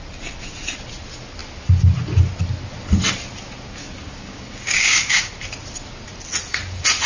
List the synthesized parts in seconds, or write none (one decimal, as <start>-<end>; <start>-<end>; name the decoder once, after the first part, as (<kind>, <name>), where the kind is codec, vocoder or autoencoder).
3.8-5.3 (codec, DAC)